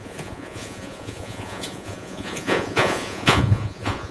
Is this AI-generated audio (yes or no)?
yes